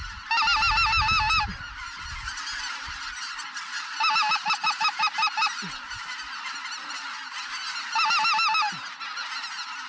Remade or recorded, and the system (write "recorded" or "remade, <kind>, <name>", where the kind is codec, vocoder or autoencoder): recorded